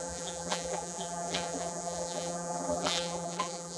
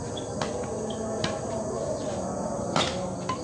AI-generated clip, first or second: first